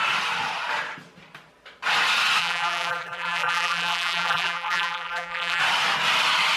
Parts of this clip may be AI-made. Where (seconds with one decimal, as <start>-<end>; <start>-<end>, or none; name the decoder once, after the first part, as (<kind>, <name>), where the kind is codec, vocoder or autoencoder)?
2.4-5.6 (vocoder, BigVGAN v2)